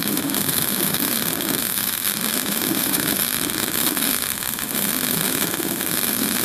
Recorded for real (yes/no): no